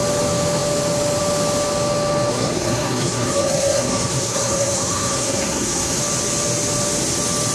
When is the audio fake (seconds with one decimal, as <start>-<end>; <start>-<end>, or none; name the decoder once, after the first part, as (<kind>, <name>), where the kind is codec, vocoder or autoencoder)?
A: 2.3-6.0 (codec, SNAC)